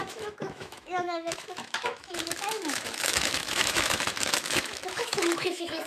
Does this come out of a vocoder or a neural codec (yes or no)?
yes